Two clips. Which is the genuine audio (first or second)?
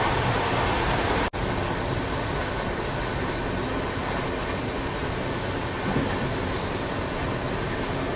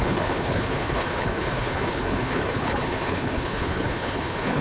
first